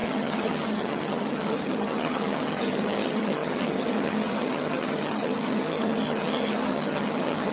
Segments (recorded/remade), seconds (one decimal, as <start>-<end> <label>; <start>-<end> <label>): 0.0-7.5 remade